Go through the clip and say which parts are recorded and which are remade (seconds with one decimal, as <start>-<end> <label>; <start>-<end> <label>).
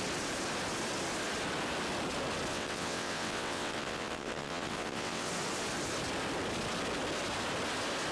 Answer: 0.0-2.5 recorded; 2.5-5.3 remade; 5.3-8.1 recorded